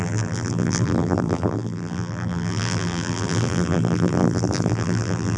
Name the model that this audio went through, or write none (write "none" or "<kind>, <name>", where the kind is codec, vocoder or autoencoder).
vocoder, BigVGAN v2